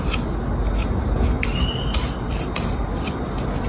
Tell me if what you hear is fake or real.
real